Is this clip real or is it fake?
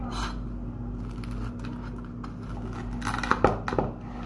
real